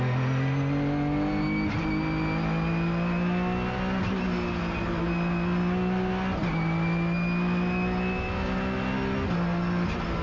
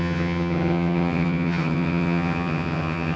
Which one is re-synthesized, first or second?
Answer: second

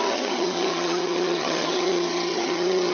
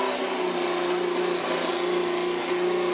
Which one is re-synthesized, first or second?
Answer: first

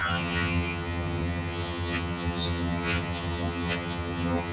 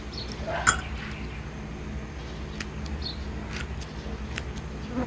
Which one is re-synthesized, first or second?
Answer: first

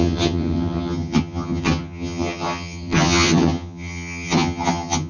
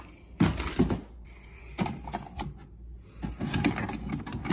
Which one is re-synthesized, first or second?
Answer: first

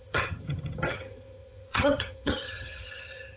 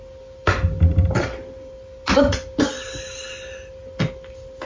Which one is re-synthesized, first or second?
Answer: first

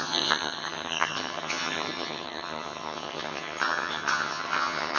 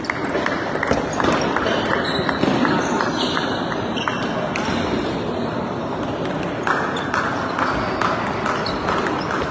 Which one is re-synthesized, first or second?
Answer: first